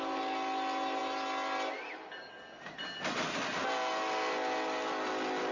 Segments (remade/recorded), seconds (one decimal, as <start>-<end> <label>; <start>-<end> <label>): 0.0-5.5 recorded